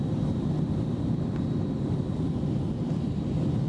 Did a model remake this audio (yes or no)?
no